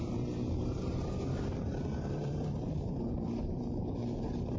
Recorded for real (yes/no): no